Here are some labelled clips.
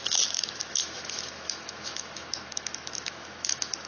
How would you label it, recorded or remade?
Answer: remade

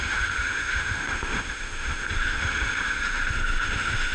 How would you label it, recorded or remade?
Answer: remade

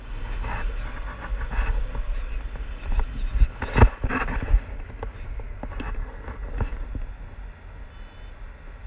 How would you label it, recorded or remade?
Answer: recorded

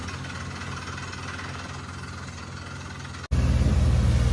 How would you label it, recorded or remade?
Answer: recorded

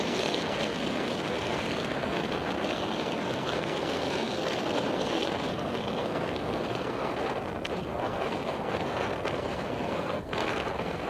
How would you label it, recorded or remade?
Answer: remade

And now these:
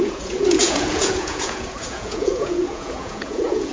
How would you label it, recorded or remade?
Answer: remade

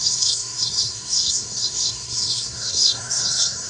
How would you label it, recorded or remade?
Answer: remade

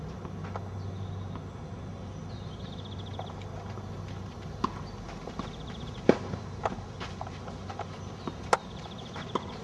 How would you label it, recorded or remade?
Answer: recorded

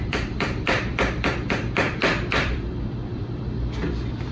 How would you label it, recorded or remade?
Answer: remade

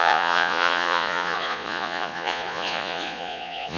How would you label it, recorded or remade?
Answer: remade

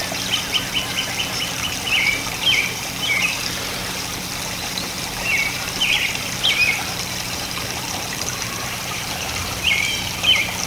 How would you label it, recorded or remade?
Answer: remade